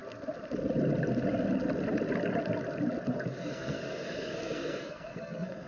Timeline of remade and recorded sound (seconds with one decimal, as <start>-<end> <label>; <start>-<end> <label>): 0.0-3.4 recorded; 3.4-5.7 remade